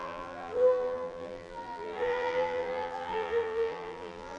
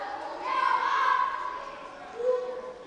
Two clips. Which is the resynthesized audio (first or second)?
first